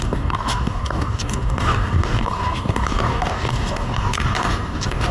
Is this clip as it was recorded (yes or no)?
no